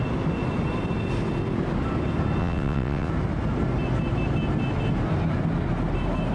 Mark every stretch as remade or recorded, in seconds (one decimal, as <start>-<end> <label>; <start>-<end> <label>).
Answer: 0.0-2.4 recorded; 2.4-3.1 remade; 3.1-6.3 recorded